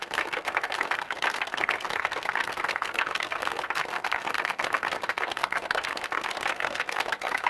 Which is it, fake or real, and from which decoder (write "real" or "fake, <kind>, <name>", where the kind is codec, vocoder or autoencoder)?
fake, codec, SNAC